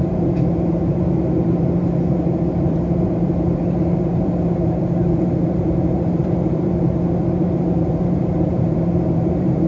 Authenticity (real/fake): fake